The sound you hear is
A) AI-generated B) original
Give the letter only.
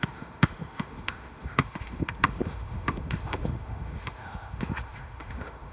A